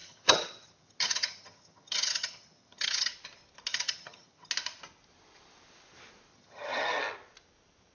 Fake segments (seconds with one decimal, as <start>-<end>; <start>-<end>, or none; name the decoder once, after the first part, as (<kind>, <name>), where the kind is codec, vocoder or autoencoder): 0.0-3.1 (vocoder, HiFi-GAN); 3.7-4.5; 6.3-7.0